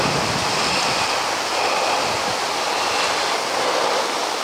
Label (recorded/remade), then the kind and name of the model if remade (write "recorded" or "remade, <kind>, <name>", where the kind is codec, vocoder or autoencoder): recorded